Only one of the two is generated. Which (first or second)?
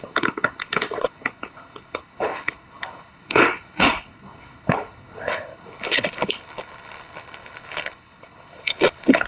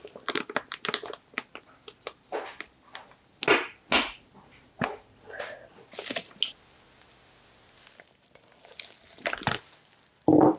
first